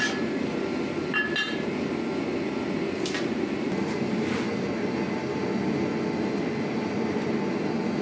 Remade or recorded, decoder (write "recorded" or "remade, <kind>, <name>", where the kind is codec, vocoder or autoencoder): recorded